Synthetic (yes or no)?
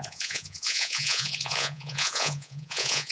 yes